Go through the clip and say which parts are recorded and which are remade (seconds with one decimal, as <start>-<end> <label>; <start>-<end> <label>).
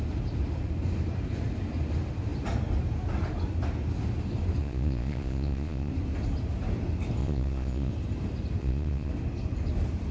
0.0-4.6 recorded; 4.6-5.9 remade; 5.9-7.2 recorded; 7.2-7.9 remade; 7.9-8.6 recorded; 8.6-9.1 remade; 9.1-10.1 recorded